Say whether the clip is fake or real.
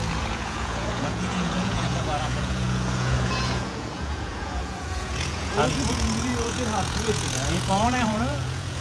fake